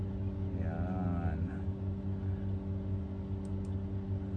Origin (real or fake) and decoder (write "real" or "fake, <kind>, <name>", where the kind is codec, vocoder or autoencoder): real